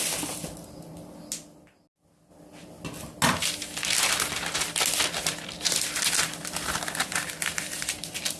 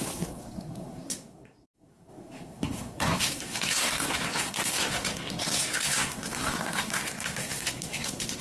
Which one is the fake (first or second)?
second